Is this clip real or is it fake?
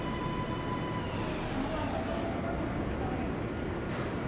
real